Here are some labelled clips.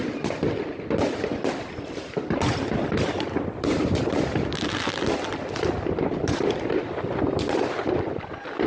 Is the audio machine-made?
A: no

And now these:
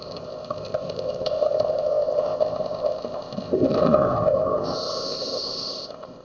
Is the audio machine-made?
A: yes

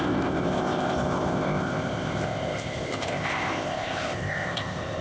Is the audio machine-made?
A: yes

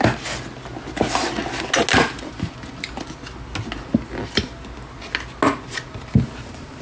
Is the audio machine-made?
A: no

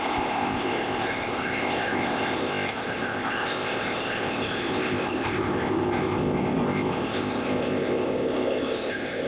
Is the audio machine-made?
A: yes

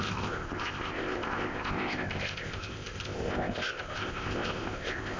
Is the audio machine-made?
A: yes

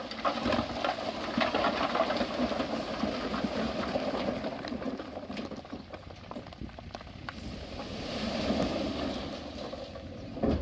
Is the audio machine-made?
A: no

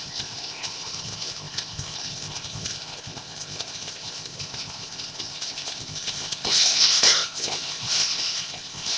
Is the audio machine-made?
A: yes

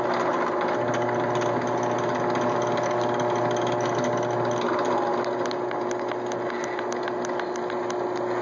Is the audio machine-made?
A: no